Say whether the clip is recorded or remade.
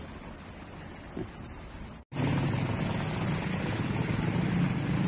recorded